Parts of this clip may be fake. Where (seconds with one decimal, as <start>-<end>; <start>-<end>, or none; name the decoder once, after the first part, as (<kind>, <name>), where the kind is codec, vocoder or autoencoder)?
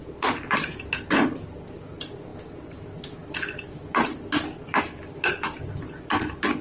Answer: none